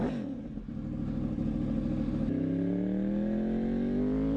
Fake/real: real